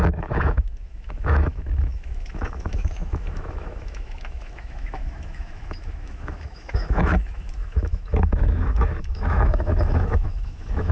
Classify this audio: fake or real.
fake